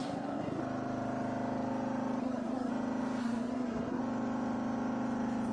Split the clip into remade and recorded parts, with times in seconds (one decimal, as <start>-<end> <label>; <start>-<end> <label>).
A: 0.0-0.6 remade; 0.6-2.2 recorded; 2.2-2.7 remade; 2.7-3.2 recorded; 3.2-4.0 remade; 4.0-5.5 recorded